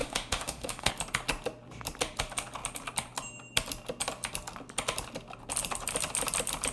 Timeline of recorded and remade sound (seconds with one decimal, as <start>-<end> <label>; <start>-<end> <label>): 0.0-0.9 remade; 0.9-6.7 recorded